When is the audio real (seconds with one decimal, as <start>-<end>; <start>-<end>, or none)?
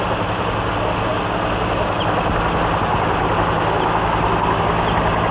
0.0-5.3